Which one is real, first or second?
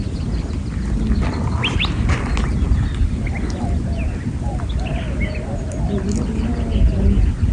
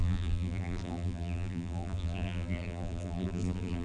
first